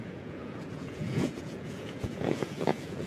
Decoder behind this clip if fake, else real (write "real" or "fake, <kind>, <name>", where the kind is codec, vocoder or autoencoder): fake, vocoder, Vocos